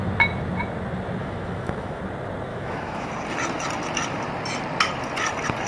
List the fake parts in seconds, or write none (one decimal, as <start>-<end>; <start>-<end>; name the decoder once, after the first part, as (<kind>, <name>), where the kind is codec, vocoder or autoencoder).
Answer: 1.2-2.0 (autoencoder, DAC-VAE); 2.5-3.1